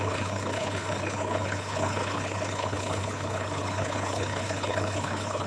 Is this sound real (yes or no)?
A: no